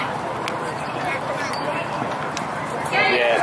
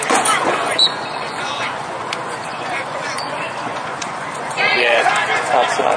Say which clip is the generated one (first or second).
second